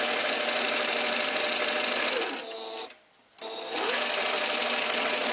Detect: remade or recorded recorded